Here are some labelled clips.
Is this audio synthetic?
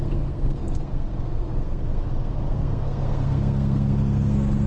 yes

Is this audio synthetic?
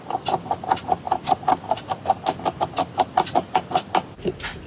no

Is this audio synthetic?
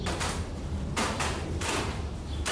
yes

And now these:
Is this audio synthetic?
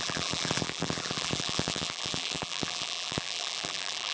yes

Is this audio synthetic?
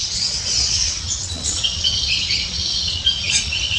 yes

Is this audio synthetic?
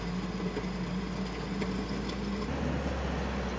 no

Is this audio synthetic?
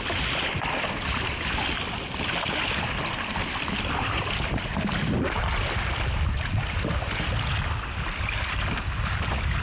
no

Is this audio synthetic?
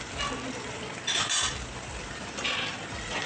no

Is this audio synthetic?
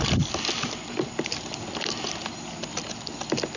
no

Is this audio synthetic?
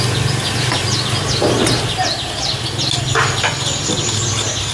no